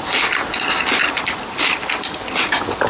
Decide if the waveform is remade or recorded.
recorded